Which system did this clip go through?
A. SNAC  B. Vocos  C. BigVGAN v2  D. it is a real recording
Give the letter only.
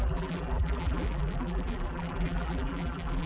C